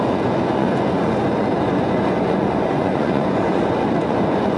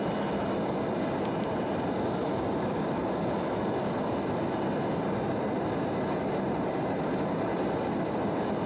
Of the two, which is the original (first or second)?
second